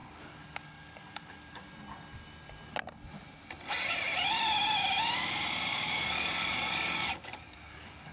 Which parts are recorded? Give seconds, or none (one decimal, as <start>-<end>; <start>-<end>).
1.7-5.7